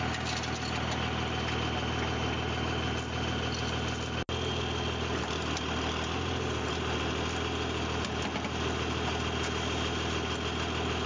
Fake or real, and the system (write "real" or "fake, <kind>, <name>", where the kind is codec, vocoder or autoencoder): real